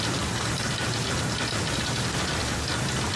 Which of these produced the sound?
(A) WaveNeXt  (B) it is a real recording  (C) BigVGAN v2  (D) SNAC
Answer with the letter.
B